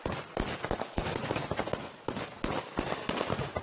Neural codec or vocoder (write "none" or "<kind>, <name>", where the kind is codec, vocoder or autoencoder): none